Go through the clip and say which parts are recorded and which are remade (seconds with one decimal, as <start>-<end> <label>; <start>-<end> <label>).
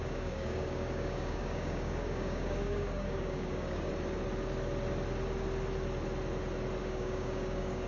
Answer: 0.0-3.9 remade; 3.9-6.8 recorded; 6.8-7.9 remade